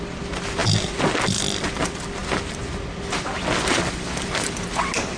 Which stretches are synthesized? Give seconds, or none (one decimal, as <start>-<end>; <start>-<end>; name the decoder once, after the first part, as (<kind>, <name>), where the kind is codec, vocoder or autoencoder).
none